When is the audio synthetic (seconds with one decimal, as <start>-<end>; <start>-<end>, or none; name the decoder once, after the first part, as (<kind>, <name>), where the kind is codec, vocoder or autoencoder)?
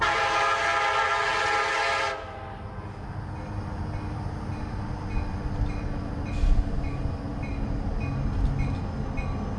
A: none